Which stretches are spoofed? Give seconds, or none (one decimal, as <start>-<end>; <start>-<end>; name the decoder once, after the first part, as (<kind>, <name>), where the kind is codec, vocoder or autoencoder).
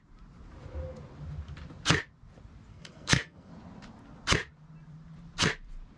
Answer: 2.7-3.5 (codec, SNAC)